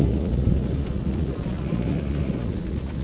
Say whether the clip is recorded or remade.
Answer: remade